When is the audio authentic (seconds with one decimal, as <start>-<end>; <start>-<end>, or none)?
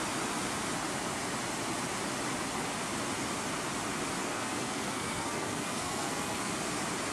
0.0-4.2; 6.5-7.1